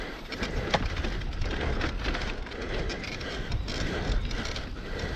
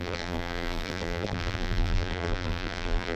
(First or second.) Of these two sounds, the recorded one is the first